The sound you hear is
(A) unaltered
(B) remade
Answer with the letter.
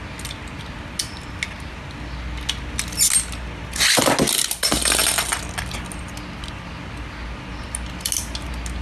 A